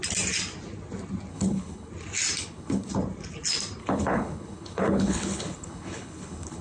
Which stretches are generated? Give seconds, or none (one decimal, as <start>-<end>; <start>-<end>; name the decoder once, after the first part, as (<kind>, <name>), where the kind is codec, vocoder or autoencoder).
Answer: 1.3-1.9 (codec, HILCodec); 2.4-2.9; 3.8-6.6

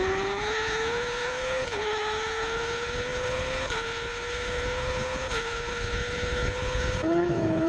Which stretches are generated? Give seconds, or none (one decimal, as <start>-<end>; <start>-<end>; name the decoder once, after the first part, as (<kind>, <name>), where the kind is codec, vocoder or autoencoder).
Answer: 0.0-7.7 (codec, HILCodec)

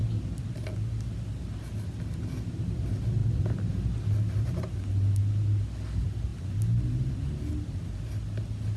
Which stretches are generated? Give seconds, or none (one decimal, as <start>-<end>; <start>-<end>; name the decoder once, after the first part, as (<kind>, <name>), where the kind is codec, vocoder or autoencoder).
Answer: none

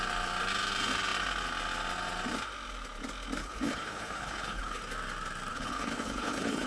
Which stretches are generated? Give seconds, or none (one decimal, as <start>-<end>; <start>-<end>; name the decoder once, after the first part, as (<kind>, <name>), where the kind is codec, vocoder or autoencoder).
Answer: 3.4-4.8 (codec, HILCodec); 5.5-6.7

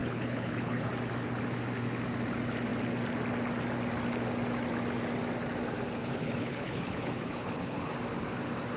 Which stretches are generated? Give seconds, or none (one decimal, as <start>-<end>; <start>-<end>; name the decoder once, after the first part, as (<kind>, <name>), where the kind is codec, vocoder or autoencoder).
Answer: 0.0-0.9 (codec, HILCodec); 6.0-7.9

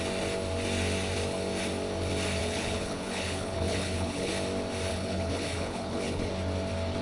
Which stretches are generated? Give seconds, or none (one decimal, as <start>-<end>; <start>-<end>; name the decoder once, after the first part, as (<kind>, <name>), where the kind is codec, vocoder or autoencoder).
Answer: 2.4-4.3 (codec, HILCodec); 4.9-6.3

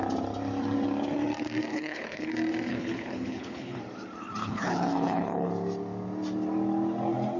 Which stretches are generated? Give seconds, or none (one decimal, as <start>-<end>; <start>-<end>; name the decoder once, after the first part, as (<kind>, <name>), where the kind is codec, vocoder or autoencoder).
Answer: 1.7-2.3 (codec, HILCodec); 2.7-3.8; 4.4-5.5